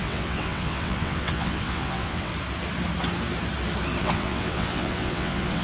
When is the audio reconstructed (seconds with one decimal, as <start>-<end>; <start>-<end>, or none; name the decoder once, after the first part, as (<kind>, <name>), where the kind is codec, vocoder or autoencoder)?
0.0-2.3 (vocoder, WaveNeXt); 4.0-5.6